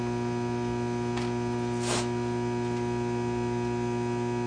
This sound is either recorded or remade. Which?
recorded